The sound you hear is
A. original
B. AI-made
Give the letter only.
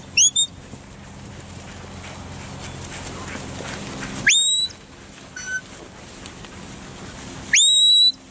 A